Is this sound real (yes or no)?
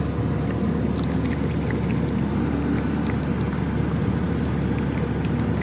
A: yes